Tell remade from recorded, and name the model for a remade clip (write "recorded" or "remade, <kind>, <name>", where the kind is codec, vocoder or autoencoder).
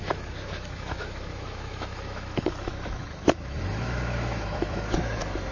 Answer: remade, autoencoder, DAC-VAE